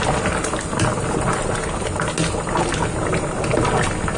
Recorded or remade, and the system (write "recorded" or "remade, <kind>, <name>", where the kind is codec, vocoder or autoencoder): recorded